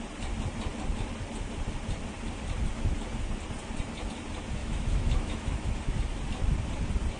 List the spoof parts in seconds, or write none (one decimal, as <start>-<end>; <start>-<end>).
4.6-6.0

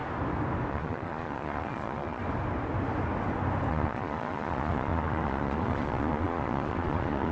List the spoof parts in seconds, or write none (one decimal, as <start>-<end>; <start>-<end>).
0.7-2.2; 3.7-7.3

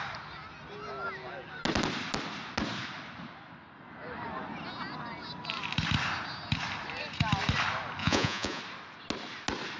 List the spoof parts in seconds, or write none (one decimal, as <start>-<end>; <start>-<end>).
8.0-8.6

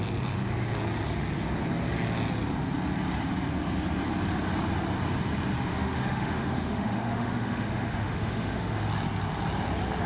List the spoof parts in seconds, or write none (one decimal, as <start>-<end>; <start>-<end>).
5.7-8.9